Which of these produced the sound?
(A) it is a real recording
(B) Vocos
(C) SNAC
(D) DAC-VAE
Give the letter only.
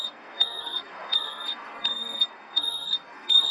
C